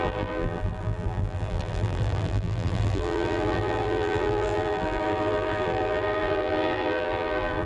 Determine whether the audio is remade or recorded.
remade